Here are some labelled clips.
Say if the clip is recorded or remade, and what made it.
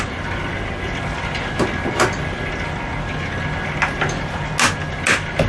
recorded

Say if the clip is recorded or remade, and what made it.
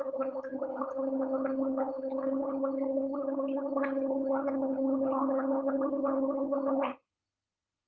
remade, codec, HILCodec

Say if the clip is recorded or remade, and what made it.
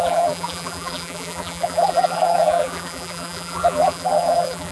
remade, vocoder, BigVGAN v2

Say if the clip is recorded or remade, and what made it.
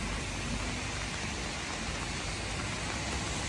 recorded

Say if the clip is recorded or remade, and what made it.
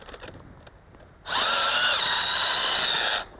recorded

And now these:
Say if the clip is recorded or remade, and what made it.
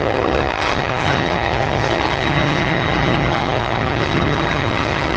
remade, vocoder, HiFi-GAN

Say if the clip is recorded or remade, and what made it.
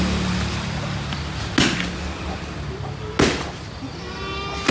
recorded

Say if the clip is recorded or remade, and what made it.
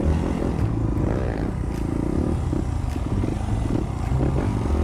recorded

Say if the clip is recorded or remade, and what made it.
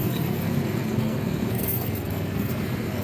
remade, codec, SNAC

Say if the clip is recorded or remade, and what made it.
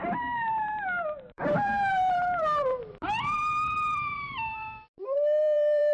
remade, vocoder, BigVGAN v2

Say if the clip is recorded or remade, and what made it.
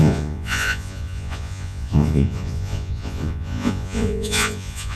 remade, vocoder, Vocos